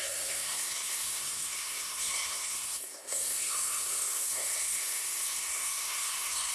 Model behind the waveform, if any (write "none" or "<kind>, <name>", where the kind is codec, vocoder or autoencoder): codec, SNAC